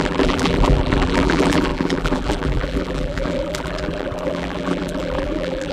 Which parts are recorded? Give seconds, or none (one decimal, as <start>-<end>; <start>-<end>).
none